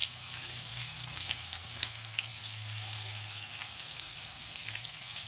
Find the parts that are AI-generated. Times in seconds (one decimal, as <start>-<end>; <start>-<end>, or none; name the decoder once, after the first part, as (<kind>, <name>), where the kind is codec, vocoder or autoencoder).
0.0-5.3 (codec, SNAC)